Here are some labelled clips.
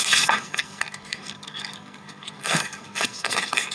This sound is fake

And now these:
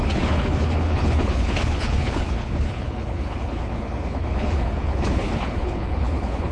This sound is fake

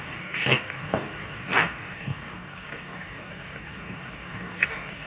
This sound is fake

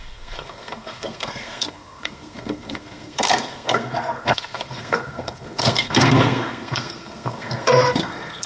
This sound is fake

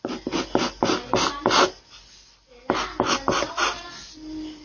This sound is real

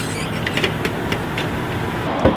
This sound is real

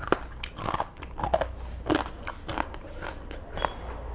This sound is real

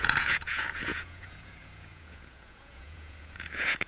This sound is fake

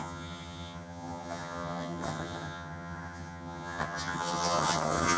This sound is fake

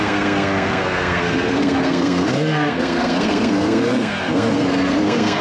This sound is fake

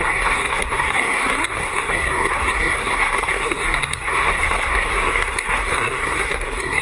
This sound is fake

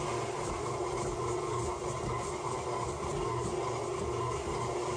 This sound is real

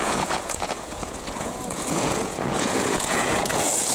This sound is fake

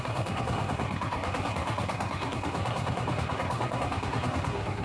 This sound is fake